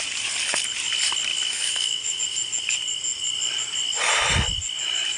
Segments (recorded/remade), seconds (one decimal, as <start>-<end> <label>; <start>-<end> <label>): 0.0-1.3 recorded; 1.3-2.2 remade; 2.2-5.2 recorded